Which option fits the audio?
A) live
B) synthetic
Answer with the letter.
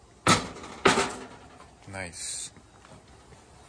A